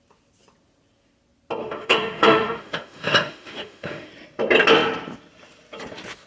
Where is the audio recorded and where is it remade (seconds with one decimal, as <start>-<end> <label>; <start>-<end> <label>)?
0.0-1.6 recorded; 1.6-4.1 remade; 4.1-6.3 recorded